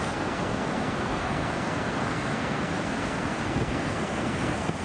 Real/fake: fake